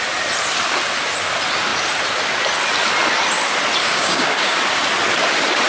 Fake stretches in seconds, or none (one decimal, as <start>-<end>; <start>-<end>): 3.8-4.6